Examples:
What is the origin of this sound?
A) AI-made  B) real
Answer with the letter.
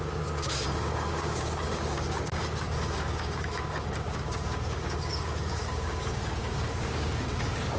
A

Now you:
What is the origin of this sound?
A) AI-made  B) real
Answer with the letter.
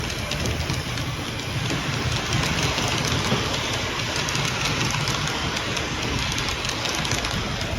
B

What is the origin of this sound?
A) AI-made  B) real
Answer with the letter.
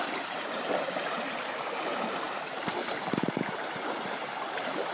A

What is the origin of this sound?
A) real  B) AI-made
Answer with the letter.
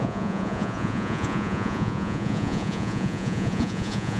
B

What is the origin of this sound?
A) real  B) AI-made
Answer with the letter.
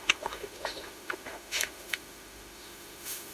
B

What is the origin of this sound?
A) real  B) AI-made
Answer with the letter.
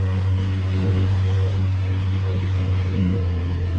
B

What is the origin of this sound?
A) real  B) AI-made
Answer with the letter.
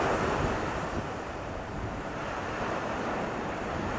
B